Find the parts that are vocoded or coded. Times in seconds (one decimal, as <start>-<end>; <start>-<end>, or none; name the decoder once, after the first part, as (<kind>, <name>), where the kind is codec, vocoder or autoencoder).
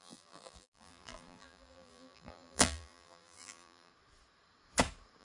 0.0-3.9 (vocoder, BigVGAN v2)